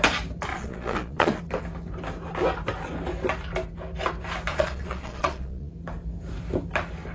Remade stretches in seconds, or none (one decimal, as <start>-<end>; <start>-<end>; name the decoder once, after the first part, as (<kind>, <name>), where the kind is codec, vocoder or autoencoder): 0.5-1.4 (vocoder, Vocos); 4.5-5.7